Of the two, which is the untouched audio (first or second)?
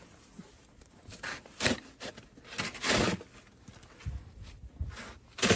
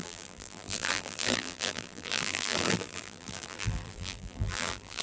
first